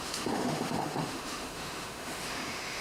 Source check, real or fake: fake